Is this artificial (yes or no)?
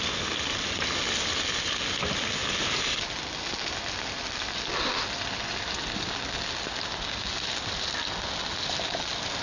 no